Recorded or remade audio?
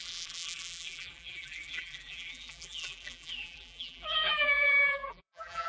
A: remade